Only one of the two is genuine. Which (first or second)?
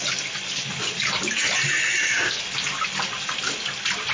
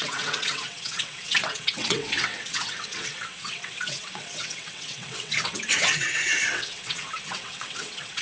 first